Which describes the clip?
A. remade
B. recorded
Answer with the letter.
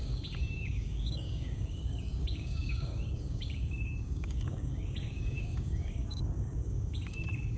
A